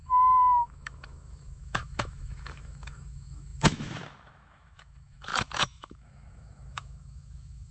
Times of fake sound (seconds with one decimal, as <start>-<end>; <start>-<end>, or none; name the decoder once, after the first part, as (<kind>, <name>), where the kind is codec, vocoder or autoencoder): 0.0-7.7 (autoencoder, DAC-VAE)